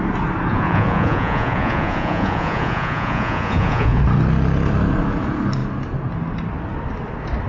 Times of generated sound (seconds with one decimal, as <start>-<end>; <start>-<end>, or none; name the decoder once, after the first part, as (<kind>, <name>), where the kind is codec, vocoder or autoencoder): 0.5-4.0 (vocoder, Vocos)

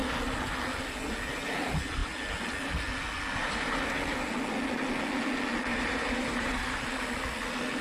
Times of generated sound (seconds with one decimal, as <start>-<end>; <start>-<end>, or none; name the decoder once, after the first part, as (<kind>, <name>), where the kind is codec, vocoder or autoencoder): 5.7-6.8 (vocoder, BigVGAN v2)

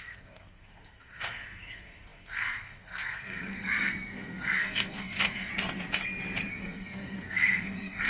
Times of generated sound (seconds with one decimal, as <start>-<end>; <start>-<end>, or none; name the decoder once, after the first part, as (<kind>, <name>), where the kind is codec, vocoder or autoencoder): 0.0-5.5 (codec, SNAC); 6.5-8.1

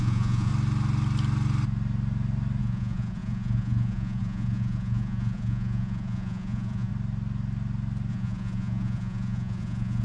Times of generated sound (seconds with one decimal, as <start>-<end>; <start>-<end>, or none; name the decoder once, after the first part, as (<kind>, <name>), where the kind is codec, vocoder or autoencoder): 0.0-0.5 (vocoder, Vocos); 2.6-6.9; 8.1-10.0

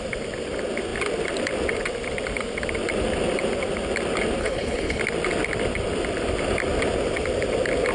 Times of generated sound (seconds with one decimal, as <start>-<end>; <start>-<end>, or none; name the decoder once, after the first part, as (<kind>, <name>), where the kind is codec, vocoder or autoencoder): 4.4-5.0 (codec, HILCodec)

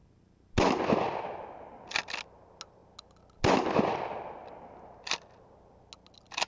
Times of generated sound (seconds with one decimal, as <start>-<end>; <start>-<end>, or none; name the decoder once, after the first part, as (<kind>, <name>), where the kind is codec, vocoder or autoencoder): none

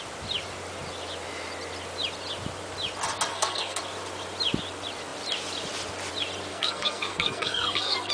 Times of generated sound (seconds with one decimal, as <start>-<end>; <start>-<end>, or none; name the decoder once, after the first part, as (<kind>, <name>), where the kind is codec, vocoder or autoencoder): 3.3-3.8 (codec, SNAC); 6.5-8.1